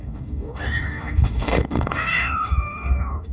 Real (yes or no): no